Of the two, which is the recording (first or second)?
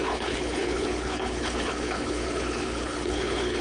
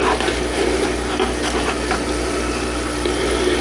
second